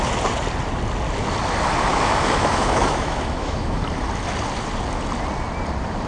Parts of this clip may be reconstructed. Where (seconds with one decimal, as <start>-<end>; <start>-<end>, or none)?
1.9-3.8

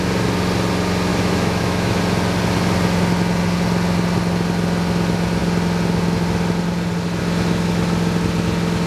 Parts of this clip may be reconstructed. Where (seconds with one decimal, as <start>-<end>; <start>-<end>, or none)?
1.1-2.0

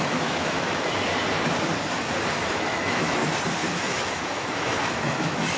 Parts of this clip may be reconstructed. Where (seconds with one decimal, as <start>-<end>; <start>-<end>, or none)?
0.0-1.1; 2.3-3.2; 3.8-5.6

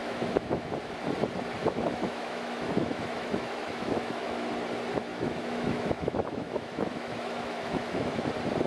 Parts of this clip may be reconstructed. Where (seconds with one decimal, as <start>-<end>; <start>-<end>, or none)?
0.0-0.7; 1.6-4.5; 5.1-8.2

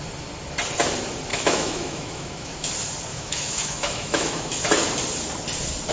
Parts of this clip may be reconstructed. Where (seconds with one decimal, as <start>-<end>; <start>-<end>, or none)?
1.3-2.7; 3.1-4.6

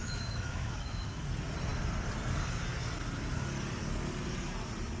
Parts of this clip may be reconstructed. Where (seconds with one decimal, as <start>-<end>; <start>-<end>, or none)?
0.0-1.2